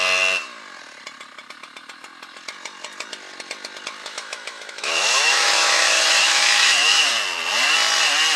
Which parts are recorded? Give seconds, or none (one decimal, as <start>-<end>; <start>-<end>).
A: 0.0-4.0; 7.1-8.4